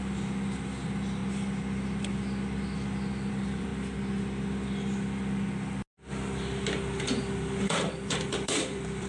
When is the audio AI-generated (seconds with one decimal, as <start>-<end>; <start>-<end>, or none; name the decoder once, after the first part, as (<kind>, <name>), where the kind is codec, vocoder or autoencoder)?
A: 0.0-1.2 (vocoder, BigVGAN v2); 3.3-3.7; 7.6-9.1